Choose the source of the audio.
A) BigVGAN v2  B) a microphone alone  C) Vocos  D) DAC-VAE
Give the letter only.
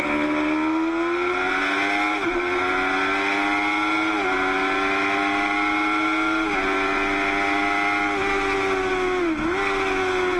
B